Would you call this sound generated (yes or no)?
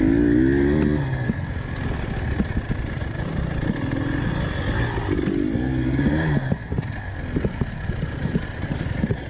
no